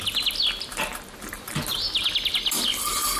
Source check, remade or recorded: recorded